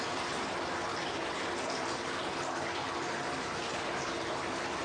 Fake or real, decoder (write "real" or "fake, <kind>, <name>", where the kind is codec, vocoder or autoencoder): real